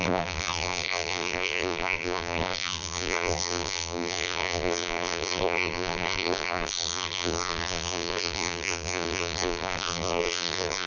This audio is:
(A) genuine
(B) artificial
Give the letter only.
B